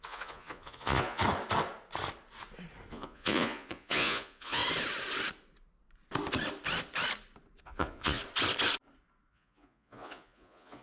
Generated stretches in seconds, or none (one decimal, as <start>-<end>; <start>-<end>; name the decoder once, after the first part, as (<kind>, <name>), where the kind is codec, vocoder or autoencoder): 0.0-1.2 (vocoder, Vocos); 2.9-4.6; 7.6-8.2; 9.3-10.8